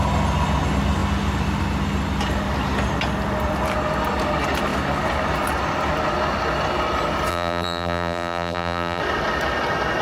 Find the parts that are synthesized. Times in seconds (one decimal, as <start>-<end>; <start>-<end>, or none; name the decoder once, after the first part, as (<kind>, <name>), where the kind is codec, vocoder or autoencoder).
7.3-9.0 (vocoder, BigVGAN v2)